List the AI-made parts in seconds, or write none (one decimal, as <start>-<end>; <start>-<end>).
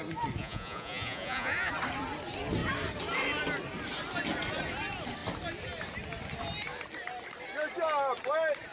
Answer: 0.4-1.7